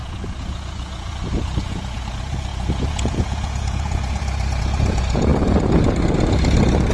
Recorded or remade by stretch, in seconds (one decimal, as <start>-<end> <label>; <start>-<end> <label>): 0.0-5.3 remade; 5.3-6.9 recorded